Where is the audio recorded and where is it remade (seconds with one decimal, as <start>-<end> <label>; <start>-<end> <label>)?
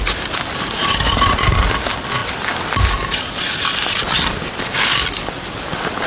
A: 0.0-6.1 recorded